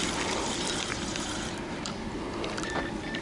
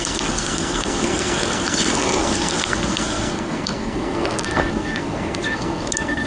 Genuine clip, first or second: first